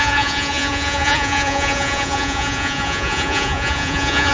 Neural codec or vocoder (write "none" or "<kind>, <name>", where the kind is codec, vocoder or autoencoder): vocoder, Vocos